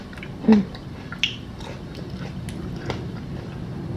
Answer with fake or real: real